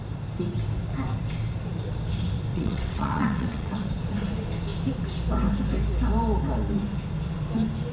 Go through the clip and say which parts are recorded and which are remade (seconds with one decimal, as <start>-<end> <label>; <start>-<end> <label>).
0.0-2.5 recorded; 2.5-3.9 remade; 3.9-7.9 recorded

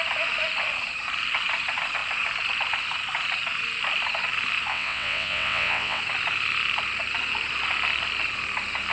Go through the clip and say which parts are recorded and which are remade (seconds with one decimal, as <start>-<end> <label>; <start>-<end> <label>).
0.0-4.7 recorded; 4.7-6.0 remade; 6.0-8.9 recorded